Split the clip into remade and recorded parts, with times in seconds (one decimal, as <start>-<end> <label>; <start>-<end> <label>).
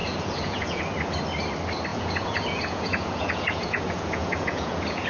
0.0-0.8 remade; 0.8-1.9 recorded; 1.9-5.1 remade